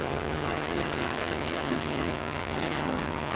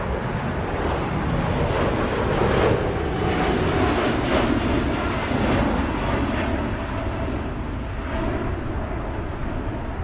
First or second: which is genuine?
second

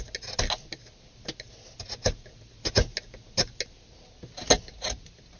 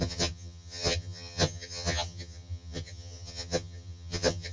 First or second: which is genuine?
first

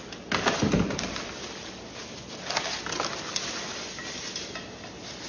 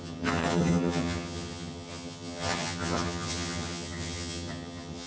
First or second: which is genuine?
first